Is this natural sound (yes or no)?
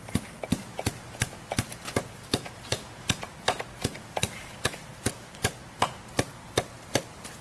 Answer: yes